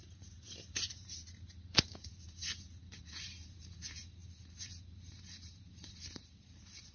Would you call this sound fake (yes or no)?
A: yes